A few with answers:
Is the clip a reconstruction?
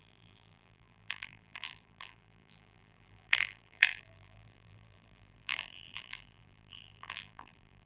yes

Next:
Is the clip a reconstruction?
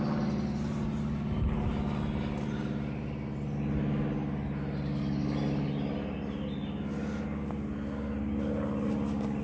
no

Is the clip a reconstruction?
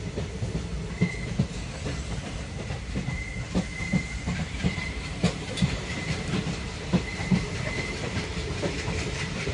yes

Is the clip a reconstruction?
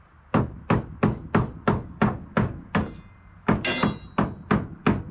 no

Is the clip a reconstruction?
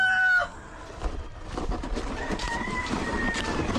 yes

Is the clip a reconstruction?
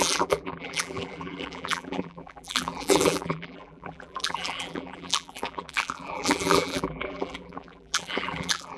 yes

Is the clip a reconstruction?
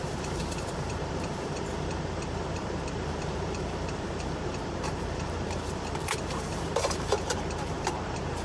yes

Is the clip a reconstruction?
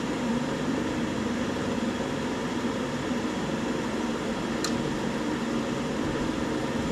yes